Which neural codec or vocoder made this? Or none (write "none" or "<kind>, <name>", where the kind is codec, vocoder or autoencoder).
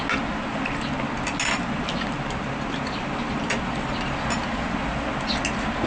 none